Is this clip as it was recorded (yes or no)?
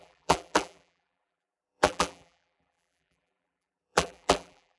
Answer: no